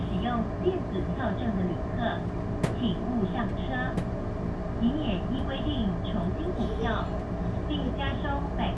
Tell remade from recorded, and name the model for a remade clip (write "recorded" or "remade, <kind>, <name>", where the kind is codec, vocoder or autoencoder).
recorded